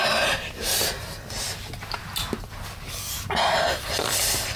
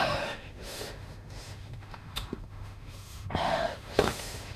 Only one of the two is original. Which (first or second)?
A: first